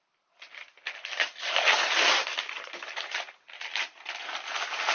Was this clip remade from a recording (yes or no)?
no